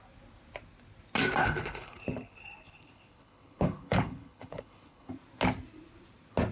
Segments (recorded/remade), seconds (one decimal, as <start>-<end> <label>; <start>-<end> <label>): 0.0-1.4 recorded; 1.4-5.1 remade; 5.1-6.5 recorded